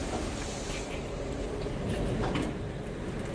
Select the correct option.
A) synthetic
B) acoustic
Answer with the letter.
B